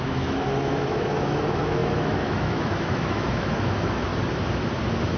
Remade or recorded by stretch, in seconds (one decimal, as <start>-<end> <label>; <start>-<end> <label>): 0.0-4.1 remade; 4.1-5.2 recorded